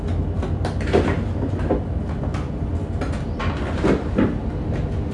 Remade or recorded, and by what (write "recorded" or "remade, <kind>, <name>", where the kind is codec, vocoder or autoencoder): recorded